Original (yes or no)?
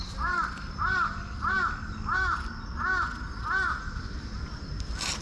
yes